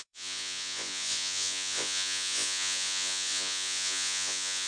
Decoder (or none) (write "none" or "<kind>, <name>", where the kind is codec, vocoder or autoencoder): vocoder, Vocos